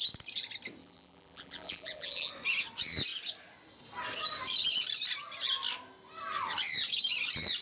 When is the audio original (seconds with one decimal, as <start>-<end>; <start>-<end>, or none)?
0.0-0.8; 2.3-7.6